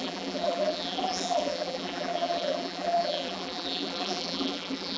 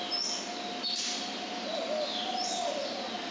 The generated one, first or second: first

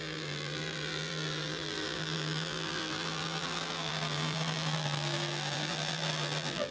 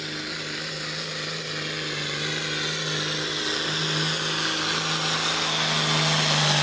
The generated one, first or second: first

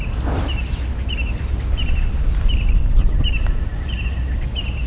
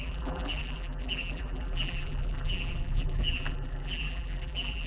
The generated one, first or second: second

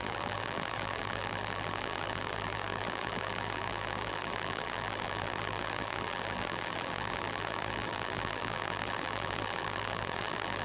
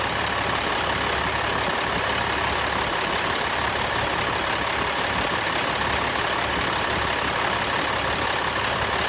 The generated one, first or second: first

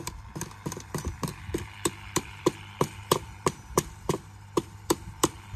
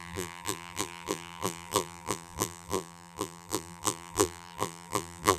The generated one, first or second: second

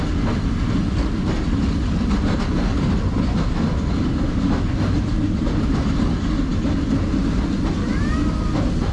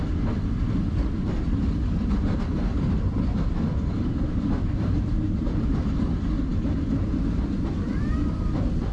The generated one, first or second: second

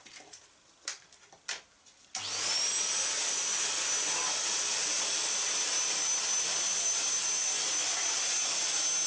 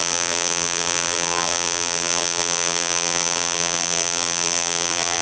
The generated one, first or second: second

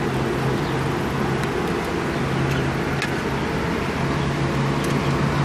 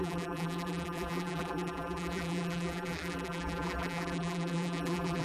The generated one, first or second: second